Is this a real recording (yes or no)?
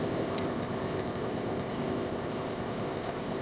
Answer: no